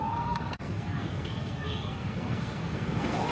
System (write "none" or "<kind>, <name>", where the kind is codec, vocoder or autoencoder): codec, SNAC